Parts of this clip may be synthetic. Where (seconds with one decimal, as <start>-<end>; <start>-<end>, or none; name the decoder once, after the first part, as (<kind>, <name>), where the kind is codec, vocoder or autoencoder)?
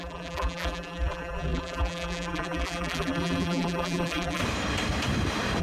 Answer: 0.0-4.4 (vocoder, BigVGAN v2)